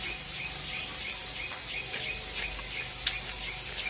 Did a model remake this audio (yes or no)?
no